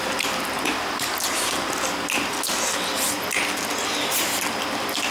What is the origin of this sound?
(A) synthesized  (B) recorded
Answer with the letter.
B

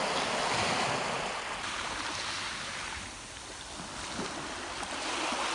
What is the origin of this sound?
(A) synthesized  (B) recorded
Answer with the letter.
B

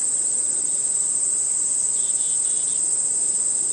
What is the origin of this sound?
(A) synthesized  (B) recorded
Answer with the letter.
B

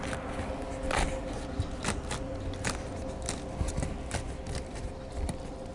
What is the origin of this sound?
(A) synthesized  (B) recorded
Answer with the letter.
B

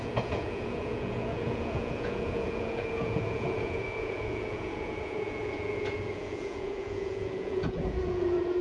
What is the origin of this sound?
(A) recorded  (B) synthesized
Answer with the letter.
B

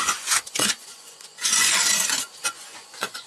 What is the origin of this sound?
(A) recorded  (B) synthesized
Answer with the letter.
B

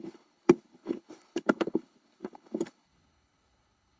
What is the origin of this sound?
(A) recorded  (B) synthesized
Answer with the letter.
B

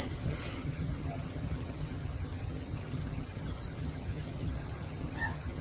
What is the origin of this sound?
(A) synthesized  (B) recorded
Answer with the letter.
A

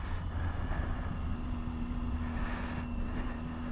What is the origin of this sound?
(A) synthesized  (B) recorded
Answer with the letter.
B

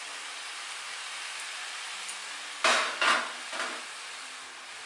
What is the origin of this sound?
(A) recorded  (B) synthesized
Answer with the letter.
A